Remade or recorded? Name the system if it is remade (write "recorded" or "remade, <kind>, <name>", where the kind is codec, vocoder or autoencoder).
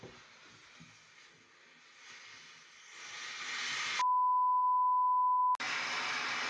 recorded